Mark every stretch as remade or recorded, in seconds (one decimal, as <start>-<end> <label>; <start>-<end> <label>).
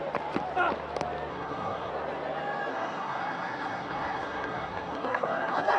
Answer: 0.0-1.3 recorded; 1.3-1.9 remade; 1.9-2.7 recorded; 2.7-5.8 remade